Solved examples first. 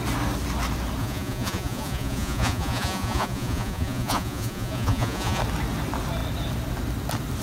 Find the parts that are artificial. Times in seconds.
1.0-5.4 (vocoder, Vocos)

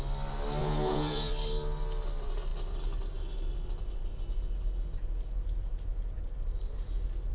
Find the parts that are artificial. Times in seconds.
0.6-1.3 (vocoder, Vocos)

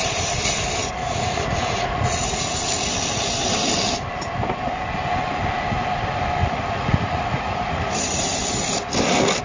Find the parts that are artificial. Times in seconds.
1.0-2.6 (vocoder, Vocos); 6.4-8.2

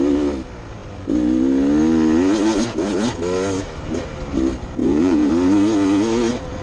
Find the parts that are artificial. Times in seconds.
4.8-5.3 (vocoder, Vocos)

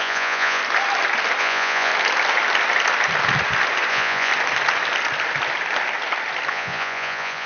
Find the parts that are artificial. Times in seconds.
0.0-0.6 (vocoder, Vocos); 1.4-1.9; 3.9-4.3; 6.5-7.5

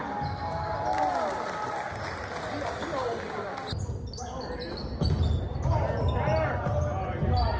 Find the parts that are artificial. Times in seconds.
none

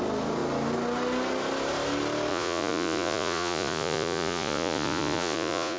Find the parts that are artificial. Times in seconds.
2.3-5.8 (vocoder, Vocos)